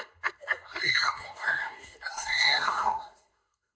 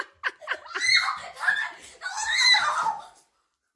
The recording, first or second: second